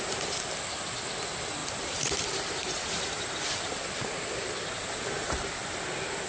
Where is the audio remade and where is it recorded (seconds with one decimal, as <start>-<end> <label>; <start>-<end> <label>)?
0.0-1.6 recorded; 1.6-3.3 remade; 3.3-6.3 recorded